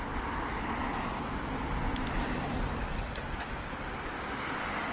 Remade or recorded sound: recorded